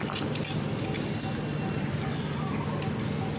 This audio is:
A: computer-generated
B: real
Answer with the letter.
B